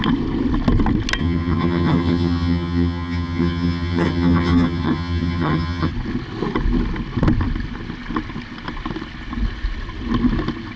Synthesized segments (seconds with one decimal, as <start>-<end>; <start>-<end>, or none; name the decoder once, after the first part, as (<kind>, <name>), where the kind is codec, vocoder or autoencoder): 1.2-5.9 (vocoder, HiFi-GAN)